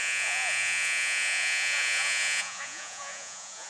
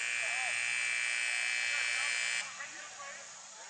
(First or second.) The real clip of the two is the second